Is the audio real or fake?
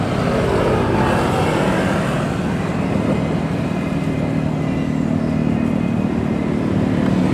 real